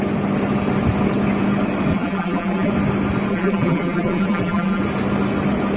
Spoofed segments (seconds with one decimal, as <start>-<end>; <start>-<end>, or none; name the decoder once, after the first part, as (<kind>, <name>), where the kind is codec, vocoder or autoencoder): 1.9-2.7 (vocoder, BigVGAN v2); 3.3-4.8